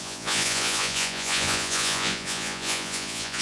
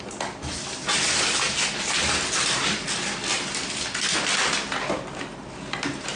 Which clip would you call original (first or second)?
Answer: second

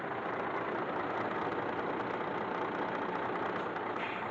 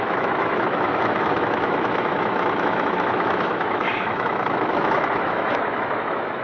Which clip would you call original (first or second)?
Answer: first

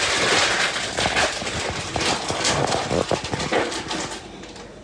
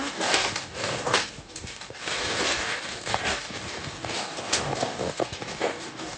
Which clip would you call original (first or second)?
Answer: first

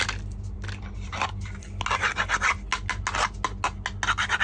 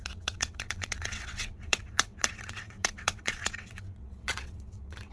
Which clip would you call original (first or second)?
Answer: first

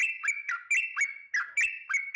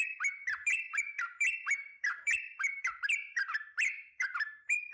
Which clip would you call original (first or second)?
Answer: first